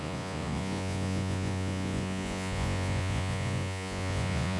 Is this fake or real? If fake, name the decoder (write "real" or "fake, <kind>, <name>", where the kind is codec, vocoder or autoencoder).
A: fake, vocoder, Vocos